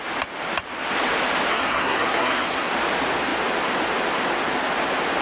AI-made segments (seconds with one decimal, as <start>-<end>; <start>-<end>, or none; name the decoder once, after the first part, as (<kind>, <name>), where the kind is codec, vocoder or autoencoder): 1.5-2.7 (codec, SNAC)